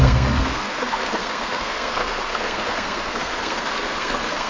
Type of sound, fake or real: fake